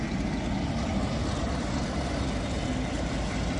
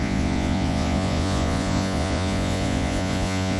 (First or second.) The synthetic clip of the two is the second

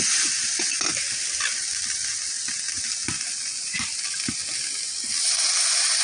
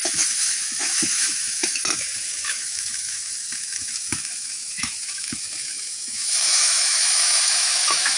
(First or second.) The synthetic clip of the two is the second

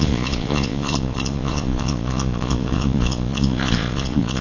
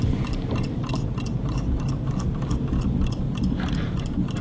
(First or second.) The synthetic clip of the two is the first